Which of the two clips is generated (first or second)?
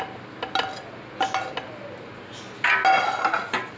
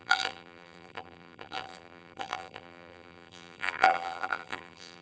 second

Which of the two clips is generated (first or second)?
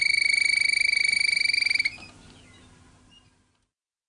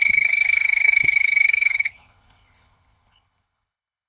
second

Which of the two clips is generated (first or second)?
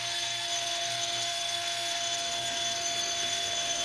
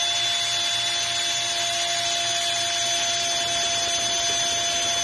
first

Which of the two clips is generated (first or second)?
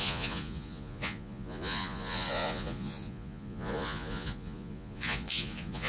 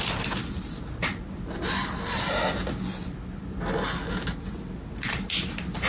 first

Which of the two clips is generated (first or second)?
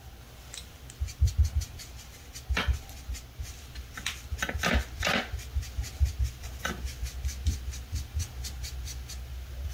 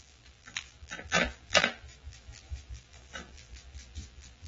second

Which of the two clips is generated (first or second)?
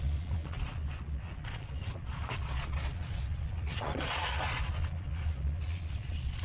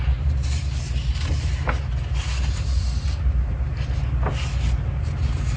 first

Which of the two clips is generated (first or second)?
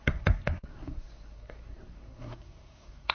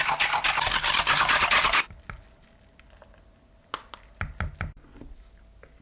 first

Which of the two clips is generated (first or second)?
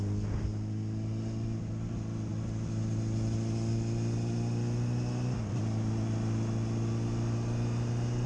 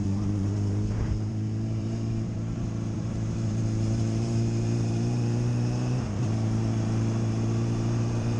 second